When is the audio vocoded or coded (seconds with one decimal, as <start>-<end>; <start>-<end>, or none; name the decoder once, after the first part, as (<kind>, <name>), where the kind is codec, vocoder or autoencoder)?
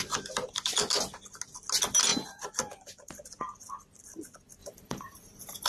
2.1-3.1 (vocoder, BigVGAN v2); 4.6-5.7